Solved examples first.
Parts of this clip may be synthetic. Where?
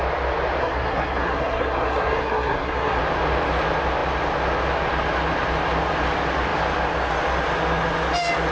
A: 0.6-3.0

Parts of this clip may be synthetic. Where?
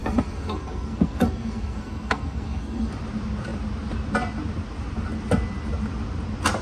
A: 0.0-2.9